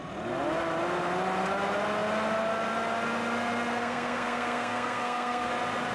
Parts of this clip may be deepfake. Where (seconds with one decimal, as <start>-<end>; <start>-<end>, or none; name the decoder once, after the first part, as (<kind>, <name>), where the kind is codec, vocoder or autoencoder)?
3.8-5.5 (codec, SNAC)